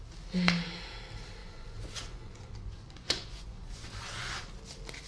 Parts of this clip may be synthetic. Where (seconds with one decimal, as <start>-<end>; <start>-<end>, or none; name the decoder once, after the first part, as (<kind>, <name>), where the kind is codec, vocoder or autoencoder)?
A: 1.4-4.5 (vocoder, Vocos)